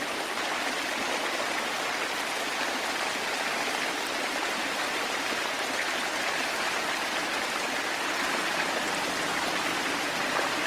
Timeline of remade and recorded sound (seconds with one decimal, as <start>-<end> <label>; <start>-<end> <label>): 0.0-10.7 recorded